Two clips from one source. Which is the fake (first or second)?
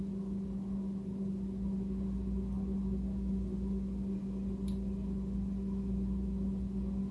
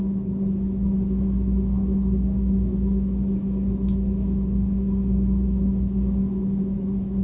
second